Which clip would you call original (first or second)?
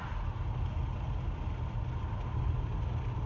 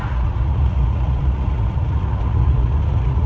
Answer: first